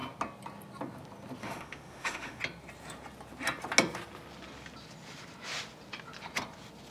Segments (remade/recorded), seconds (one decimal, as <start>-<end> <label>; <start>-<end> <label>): 0.0-1.4 recorded; 1.4-2.4 remade; 2.4-6.9 recorded